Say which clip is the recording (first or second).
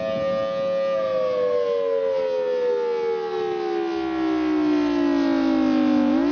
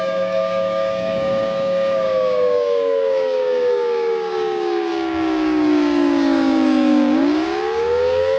first